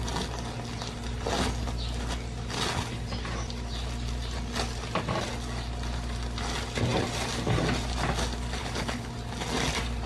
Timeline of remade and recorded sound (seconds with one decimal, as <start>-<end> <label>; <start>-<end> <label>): 0.0-8.6 recorded; 8.6-9.1 remade; 9.1-10.1 recorded